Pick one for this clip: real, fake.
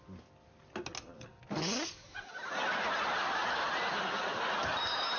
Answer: real